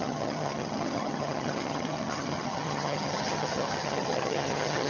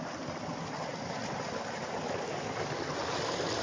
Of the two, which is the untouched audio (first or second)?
second